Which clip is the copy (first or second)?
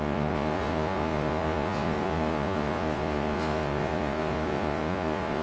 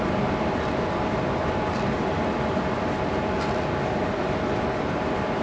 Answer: first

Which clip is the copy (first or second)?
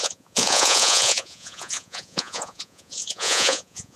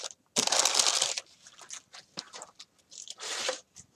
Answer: first